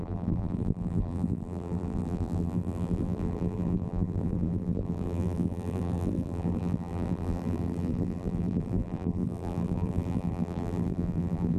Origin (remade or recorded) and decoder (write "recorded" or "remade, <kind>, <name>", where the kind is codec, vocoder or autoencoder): remade, vocoder, BigVGAN v2